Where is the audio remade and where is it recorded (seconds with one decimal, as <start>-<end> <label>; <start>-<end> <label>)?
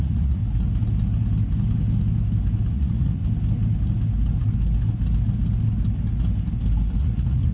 0.0-0.4 remade; 0.4-2.7 recorded; 2.7-3.2 remade; 3.2-7.0 recorded; 7.0-7.5 remade